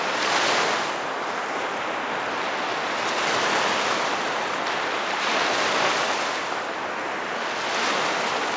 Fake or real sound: real